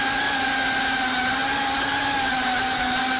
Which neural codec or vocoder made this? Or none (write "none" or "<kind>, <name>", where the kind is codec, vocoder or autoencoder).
none